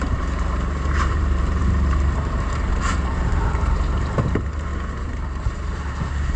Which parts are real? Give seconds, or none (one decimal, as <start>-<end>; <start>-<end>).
4.7-5.4